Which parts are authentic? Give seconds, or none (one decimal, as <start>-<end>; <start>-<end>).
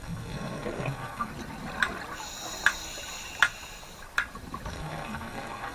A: 1.3-4.7